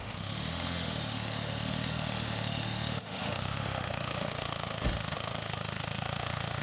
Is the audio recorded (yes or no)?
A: no